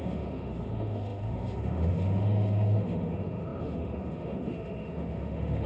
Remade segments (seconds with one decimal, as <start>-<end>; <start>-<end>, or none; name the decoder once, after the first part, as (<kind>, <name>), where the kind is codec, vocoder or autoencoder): 0.0-5.7 (autoencoder, DAC-VAE)